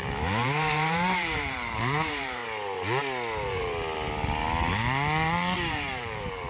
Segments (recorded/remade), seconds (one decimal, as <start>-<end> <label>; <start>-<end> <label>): 0.0-2.4 remade; 2.4-5.7 recorded; 5.7-6.5 remade